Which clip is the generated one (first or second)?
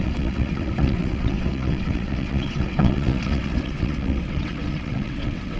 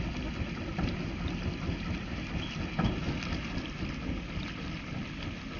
first